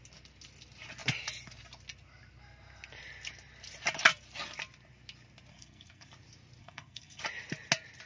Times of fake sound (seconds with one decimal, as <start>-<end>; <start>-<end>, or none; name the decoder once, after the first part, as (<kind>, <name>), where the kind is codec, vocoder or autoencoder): 5.5-6.1 (codec, SNAC); 6.6-7.2